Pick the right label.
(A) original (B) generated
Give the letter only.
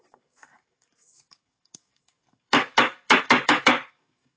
B